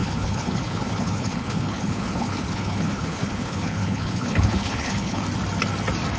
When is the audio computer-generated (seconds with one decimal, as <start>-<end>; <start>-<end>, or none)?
0.0-5.2